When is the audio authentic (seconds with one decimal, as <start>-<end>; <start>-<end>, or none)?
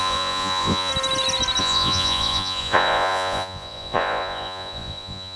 0.9-1.6